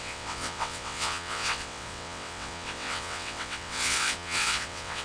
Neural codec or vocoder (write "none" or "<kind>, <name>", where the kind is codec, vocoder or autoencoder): vocoder, WaveNeXt